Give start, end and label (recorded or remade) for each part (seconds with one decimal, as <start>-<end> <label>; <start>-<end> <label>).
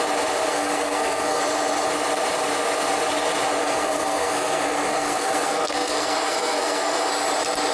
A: 0.0-0.5 recorded; 0.5-1.4 remade; 1.4-3.6 recorded; 3.6-7.1 remade; 7.1-7.7 recorded